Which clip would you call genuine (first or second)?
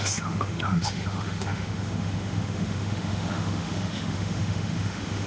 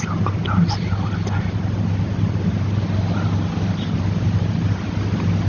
second